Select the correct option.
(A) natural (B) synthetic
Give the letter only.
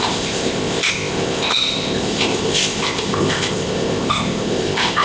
B